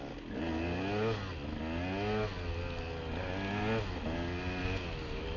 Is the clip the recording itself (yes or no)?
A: yes